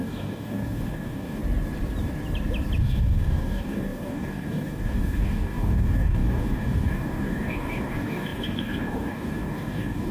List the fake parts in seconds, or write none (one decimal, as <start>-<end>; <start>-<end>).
0.0-1.4; 2.8-10.1